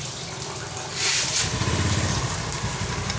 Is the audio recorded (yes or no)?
yes